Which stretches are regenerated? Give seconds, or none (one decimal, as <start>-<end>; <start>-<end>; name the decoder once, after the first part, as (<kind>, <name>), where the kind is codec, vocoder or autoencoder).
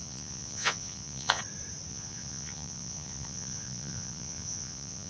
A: 0.0-1.4 (vocoder, Vocos); 1.9-5.1